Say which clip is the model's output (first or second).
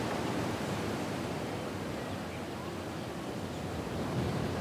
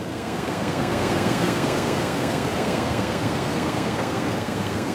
second